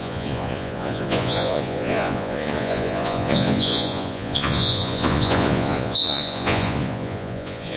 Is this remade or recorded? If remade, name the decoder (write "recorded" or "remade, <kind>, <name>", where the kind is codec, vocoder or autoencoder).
remade, vocoder, Vocos